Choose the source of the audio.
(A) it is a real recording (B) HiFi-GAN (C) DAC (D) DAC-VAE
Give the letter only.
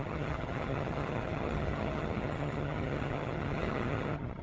B